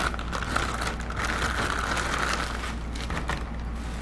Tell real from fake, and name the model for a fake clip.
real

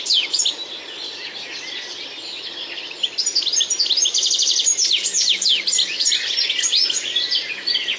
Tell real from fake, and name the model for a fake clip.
real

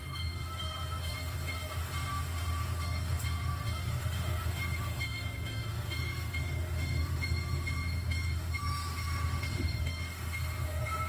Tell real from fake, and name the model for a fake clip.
fake, autoencoder, DAC-VAE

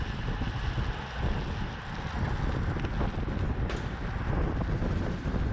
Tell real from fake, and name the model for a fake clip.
real